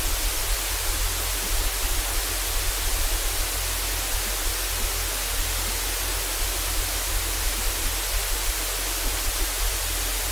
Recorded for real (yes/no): yes